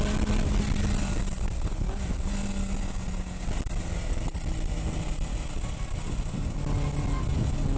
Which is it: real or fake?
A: real